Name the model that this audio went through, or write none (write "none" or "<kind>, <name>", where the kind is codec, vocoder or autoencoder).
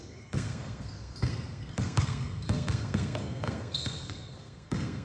codec, SNAC